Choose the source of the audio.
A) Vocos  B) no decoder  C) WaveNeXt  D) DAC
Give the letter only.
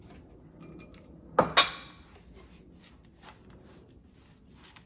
B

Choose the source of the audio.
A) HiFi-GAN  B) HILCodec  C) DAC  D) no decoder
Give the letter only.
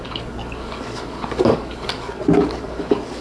C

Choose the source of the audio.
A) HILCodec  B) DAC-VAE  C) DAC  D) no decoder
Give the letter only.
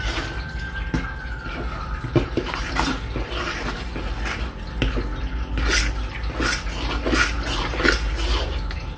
D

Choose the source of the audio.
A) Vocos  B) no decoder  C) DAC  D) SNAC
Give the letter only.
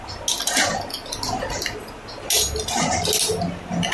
B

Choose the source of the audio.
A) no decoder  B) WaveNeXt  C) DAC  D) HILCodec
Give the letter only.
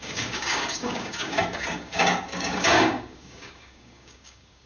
C